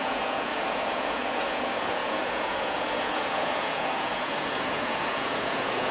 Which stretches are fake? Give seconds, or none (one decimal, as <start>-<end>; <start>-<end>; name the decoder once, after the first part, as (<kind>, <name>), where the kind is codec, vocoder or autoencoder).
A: 0.0-5.9 (vocoder, Vocos)